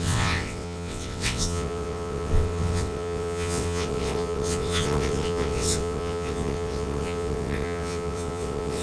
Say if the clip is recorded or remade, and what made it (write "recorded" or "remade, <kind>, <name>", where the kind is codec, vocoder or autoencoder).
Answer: remade, vocoder, WaveNeXt